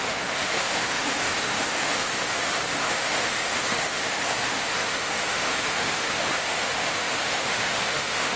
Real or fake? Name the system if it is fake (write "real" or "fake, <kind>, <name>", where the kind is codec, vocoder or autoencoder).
fake, autoencoder, DAC-VAE